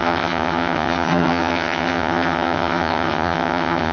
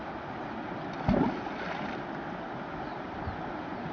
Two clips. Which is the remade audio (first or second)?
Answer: first